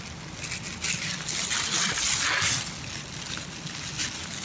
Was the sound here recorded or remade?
recorded